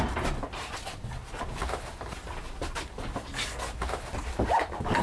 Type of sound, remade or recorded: recorded